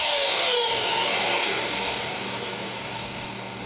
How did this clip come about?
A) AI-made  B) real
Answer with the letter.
A